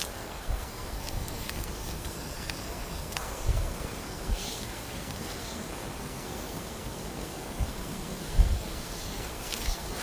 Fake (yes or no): yes